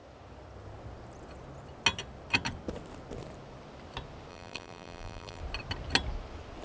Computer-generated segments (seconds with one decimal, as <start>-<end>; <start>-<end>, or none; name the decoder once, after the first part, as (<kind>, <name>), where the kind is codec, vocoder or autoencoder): 4.3-5.4 (vocoder, BigVGAN v2)